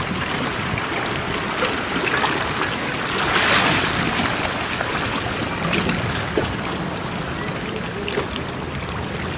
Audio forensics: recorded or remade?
recorded